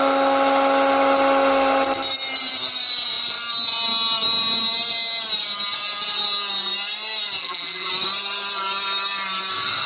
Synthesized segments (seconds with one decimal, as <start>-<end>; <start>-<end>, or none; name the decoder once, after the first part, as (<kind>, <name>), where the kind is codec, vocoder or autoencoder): 7.4-7.9 (vocoder, BigVGAN v2)